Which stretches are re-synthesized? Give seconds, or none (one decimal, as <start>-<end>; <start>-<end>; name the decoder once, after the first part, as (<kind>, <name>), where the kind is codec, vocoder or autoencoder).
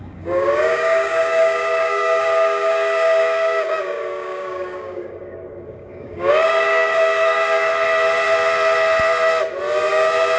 0.0-7.7 (codec, DAC); 9.9-10.4